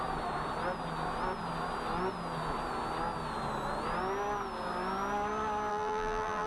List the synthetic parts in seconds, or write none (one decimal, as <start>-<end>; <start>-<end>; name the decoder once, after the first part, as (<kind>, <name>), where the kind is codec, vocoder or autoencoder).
5.7-6.5 (vocoder, BigVGAN v2)